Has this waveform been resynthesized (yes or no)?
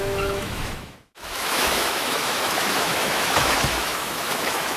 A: yes